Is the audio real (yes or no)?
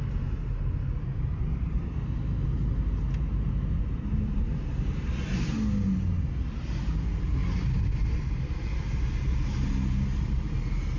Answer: yes